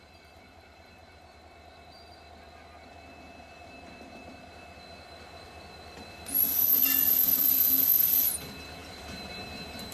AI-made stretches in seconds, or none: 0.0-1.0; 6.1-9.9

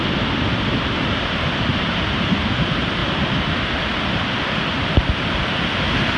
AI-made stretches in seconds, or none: 1.7-2.3; 3.0-3.8

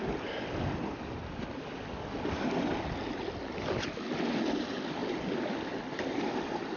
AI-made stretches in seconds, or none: 5.0-5.8

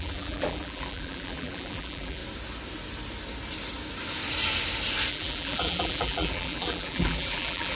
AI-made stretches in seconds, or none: 0.0-2.2; 5.1-7.8